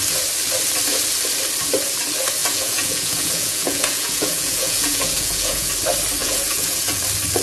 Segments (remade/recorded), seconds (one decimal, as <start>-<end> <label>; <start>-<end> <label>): 0.0-2.4 recorded; 2.4-5.7 remade; 5.7-6.2 recorded; 6.2-7.0 remade; 7.0-7.4 recorded